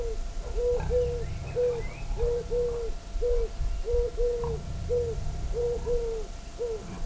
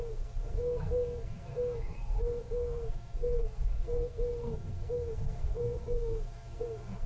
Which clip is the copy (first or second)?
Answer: second